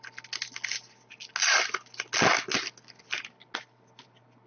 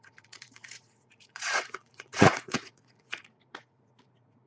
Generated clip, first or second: second